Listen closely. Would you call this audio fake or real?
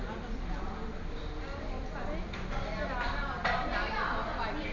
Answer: real